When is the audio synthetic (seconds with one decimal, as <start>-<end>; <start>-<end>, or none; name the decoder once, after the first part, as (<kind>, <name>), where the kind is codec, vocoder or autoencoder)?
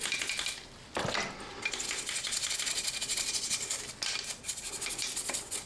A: none